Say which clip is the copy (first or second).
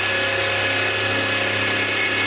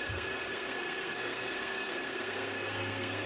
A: second